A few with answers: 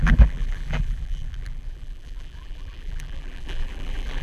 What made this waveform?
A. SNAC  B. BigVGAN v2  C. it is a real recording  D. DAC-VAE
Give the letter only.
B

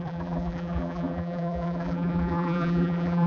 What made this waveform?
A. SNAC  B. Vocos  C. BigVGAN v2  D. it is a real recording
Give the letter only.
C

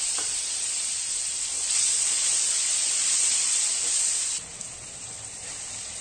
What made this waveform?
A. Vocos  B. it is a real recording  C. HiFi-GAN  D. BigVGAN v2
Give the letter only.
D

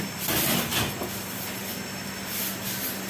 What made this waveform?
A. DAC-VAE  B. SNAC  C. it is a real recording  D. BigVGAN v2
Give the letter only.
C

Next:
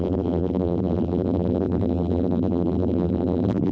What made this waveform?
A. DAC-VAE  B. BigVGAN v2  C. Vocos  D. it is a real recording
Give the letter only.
B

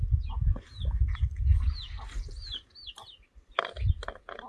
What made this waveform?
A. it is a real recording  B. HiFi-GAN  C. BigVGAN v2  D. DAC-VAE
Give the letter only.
A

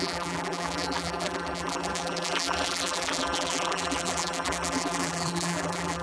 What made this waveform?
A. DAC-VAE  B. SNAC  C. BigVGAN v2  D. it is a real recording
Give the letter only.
C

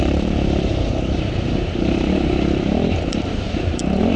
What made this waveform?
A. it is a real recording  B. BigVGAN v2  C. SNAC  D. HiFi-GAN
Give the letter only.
B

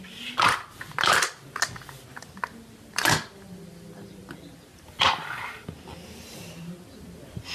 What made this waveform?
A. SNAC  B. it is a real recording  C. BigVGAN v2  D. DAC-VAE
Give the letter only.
B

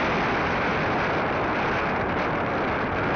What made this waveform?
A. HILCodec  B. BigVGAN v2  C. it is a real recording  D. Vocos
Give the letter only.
C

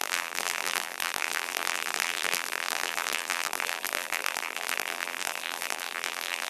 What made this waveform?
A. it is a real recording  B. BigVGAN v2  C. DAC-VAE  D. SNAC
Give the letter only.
B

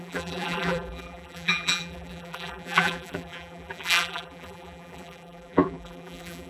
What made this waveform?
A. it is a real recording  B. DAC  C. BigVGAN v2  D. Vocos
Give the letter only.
C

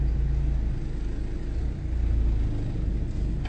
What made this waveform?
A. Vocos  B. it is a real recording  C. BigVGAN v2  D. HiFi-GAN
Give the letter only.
B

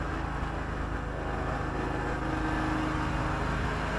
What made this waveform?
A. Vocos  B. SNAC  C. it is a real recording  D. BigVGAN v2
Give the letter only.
C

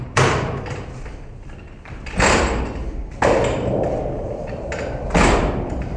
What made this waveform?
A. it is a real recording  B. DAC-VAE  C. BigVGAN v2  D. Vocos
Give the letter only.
C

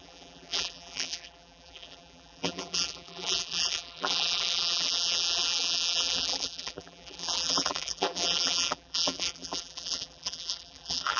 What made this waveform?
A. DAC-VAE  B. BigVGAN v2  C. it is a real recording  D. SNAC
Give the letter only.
B